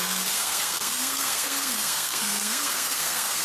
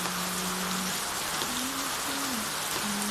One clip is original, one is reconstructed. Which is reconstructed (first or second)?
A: first